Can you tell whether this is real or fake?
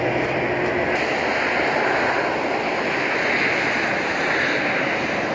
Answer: real